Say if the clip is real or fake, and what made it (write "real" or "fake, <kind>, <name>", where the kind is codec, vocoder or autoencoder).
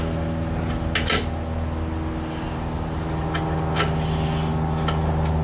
real